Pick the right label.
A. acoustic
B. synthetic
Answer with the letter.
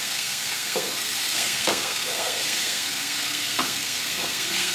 B